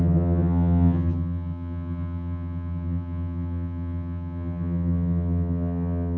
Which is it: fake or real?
fake